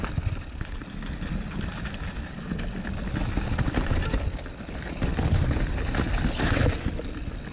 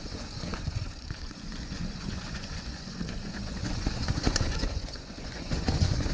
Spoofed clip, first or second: second